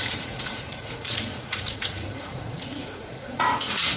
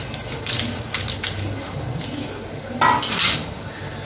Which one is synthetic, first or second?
first